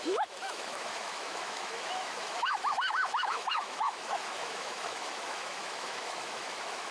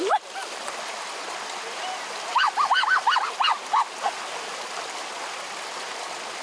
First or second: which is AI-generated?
first